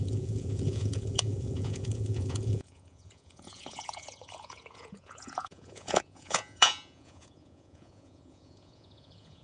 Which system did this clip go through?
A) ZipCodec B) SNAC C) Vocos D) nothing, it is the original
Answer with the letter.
C